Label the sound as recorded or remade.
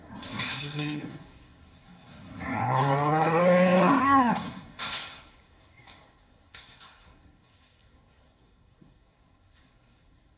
remade